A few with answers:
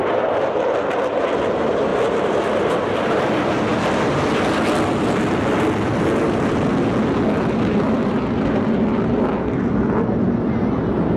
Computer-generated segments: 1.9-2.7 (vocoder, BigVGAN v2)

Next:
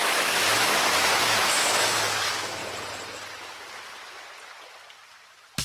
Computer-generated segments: 0.0-2.6 (autoencoder, DAC-VAE)

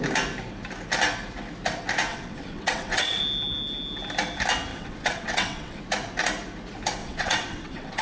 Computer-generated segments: 2.1-3.2 (vocoder, WaveNeXt); 4.7-5.8; 7.0-8.0

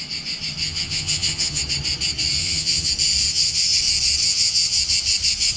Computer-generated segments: 0.6-1.6 (vocoder, HiFi-GAN); 2.4-2.9; 3.3-3.8; 4.2-4.8